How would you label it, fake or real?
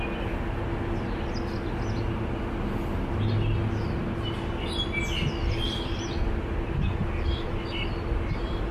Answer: real